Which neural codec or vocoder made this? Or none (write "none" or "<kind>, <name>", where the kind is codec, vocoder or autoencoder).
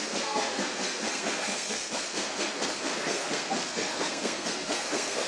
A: codec, SNAC